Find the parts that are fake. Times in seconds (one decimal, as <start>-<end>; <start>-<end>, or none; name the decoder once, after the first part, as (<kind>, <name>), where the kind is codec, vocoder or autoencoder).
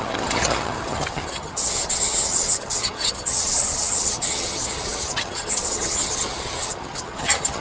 0.0-7.6 (vocoder, HiFi-GAN)